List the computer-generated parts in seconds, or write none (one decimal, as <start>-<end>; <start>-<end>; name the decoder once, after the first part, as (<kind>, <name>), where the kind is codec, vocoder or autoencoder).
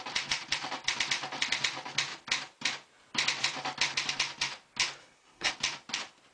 5.0-5.5 (codec, SNAC)